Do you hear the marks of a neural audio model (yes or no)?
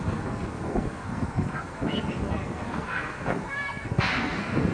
yes